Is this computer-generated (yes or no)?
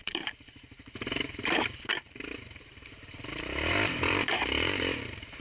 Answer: yes